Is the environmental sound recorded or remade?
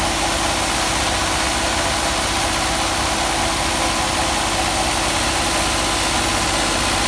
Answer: recorded